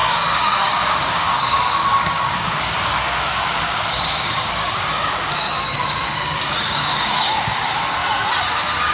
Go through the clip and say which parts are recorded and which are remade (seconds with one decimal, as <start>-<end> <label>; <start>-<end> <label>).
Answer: 0.0-8.0 remade; 8.0-8.9 recorded